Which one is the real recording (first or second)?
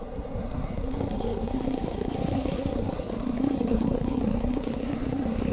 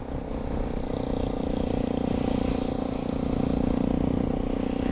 second